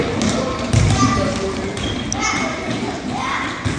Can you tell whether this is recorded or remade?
recorded